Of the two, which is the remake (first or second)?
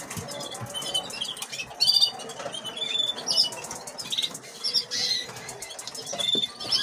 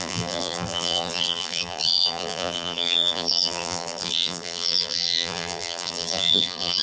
second